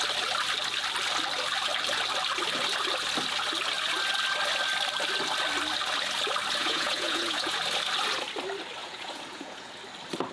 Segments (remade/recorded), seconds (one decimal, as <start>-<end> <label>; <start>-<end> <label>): 0.0-6.6 recorded; 6.6-7.6 remade; 7.6-8.8 recorded; 8.8-9.7 remade; 9.7-10.3 recorded

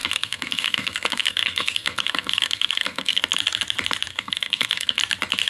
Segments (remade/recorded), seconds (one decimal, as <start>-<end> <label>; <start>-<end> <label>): 0.0-3.2 remade; 3.2-4.1 recorded; 4.1-5.0 remade; 5.0-5.5 recorded

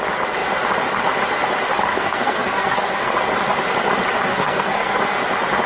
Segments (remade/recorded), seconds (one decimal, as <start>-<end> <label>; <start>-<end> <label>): 0.0-1.9 recorded; 1.9-3.1 remade; 3.1-4.3 recorded; 4.3-5.0 remade; 5.0-5.7 recorded

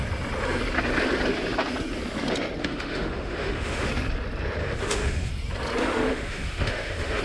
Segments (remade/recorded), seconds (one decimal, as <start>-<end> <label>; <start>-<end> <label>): 0.0-2.6 recorded; 2.6-3.9 remade; 3.9-4.6 recorded; 4.6-5.3 remade; 5.3-5.8 recorded; 5.8-7.2 remade

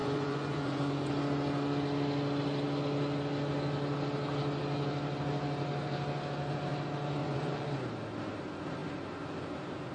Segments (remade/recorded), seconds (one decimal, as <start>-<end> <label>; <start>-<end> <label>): 0.0-1.1 remade; 1.1-7.2 recorded; 7.2-7.7 remade; 7.7-9.9 recorded